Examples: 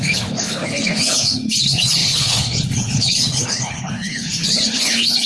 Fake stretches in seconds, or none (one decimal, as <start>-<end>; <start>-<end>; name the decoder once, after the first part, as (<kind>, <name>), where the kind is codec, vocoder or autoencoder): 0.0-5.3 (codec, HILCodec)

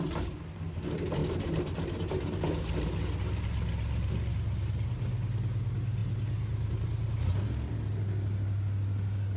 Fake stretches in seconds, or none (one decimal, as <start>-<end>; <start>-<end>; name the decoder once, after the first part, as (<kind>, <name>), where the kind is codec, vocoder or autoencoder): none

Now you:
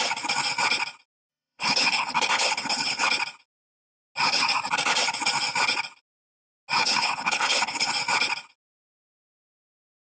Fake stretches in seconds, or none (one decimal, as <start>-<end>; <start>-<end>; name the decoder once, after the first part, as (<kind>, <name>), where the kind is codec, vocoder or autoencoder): 1.3-3.1 (codec, HILCodec); 6.8-7.9